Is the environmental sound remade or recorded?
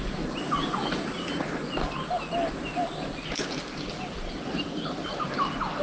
recorded